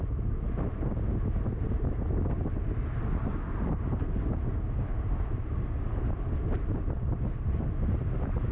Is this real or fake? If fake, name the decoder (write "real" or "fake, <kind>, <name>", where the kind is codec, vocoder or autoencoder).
real